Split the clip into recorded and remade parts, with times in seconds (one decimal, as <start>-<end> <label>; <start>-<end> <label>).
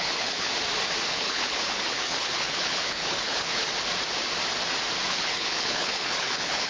0.0-0.5 remade; 0.5-1.1 recorded; 1.1-3.7 remade; 3.7-5.1 recorded; 5.1-6.7 remade